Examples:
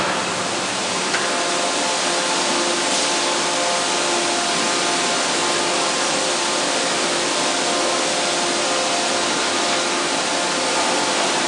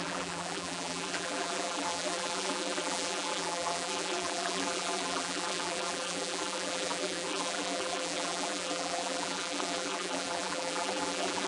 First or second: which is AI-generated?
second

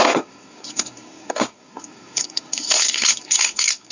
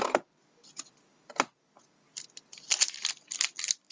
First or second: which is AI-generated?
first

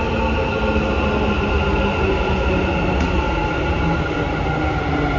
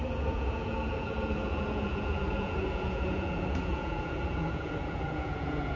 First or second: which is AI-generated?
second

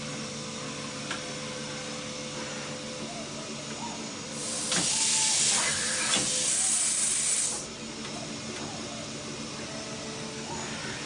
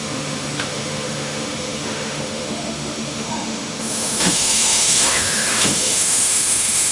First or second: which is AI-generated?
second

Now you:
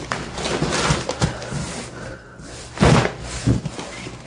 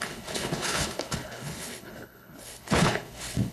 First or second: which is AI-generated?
second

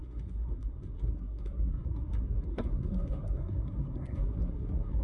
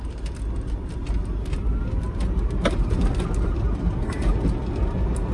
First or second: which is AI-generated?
first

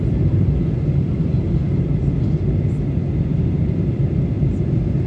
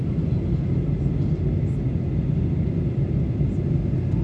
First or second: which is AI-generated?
first